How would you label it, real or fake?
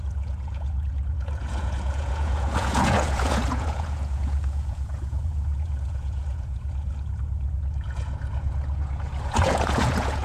fake